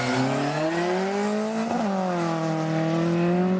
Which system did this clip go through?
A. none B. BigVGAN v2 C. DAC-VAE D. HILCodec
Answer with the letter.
A